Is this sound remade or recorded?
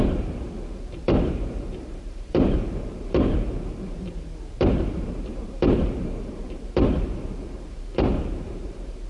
remade